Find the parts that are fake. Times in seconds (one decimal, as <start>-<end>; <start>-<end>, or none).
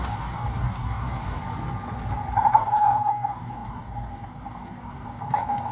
0.0-1.4; 2.5-5.7